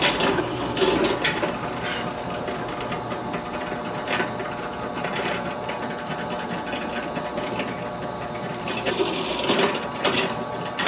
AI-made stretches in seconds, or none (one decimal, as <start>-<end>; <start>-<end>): none